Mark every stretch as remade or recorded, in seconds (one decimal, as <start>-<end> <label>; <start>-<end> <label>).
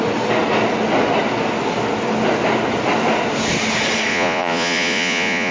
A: 0.0-4.1 recorded; 4.1-5.5 remade